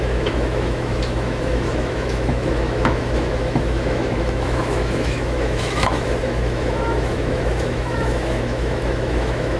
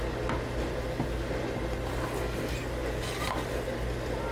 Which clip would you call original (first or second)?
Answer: second